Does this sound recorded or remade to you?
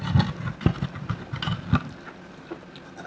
recorded